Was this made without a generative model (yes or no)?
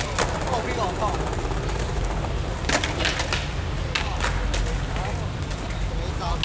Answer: yes